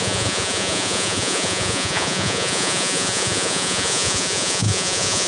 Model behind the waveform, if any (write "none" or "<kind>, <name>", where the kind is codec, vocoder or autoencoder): vocoder, Vocos